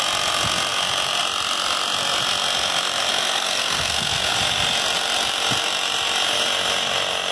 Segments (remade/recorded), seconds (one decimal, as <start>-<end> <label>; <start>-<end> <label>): 0.0-3.1 recorded; 3.1-4.3 remade; 4.3-7.3 recorded